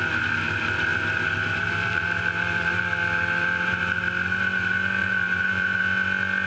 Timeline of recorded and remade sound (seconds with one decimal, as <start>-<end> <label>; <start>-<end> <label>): 0.0-0.9 recorded; 0.9-4.0 remade; 4.0-5.0 recorded; 5.0-5.8 remade; 5.8-6.5 recorded